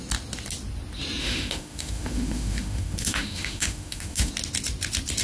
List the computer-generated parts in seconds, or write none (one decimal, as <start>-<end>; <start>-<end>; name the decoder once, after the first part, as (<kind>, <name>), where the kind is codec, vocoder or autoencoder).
1.2-4.3 (autoencoder, DAC-VAE)